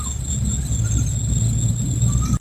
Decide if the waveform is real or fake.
real